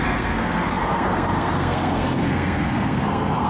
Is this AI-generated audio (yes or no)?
yes